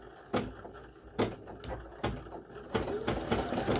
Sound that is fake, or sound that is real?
real